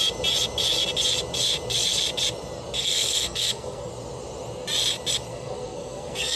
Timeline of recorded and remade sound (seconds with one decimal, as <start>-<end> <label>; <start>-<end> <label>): 0.0-2.8 recorded; 2.8-3.9 remade; 3.9-5.3 recorded; 5.3-6.4 remade